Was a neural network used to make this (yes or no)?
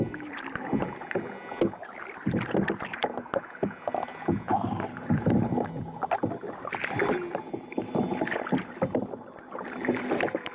no